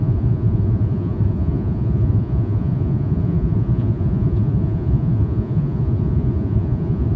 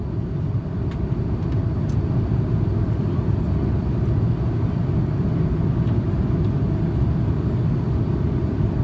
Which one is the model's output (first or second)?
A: first